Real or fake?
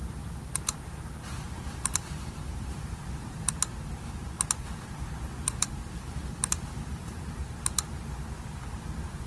fake